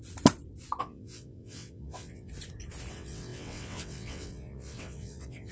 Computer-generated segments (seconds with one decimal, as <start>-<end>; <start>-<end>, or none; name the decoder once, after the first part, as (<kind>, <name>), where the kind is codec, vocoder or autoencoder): 0.8-2.3 (vocoder, WaveNeXt); 2.9-5.5